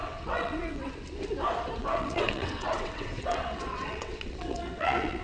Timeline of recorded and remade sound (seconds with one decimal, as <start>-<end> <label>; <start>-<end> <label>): 0.0-0.9 remade; 0.9-1.8 recorded; 1.8-5.2 remade